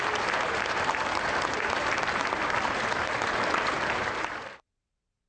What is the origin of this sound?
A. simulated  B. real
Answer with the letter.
A